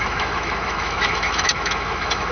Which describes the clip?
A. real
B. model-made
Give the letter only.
B